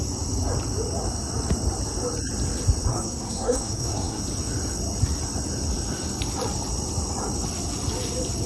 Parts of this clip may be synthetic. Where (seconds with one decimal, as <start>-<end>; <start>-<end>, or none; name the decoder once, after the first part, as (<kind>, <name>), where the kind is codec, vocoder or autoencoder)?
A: 2.9-4.2 (codec, SNAC)